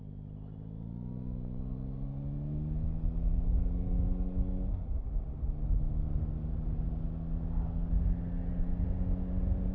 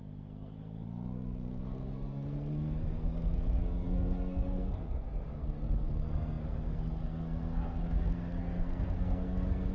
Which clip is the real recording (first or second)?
first